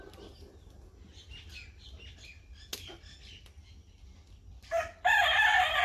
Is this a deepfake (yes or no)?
no